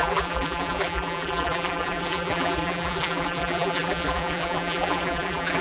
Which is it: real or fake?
fake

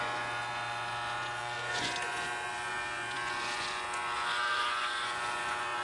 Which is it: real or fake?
fake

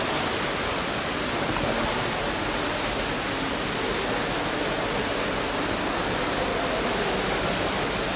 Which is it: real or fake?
real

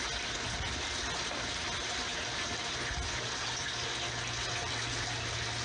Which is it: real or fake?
real